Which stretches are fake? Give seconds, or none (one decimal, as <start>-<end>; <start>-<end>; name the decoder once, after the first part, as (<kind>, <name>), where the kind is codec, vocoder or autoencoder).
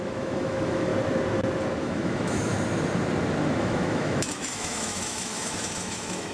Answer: 0.0-0.9 (autoencoder, DAC-VAE); 1.8-2.5; 3.6-6.3